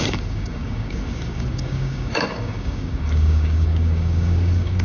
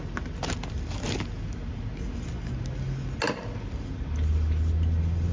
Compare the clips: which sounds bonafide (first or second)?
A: second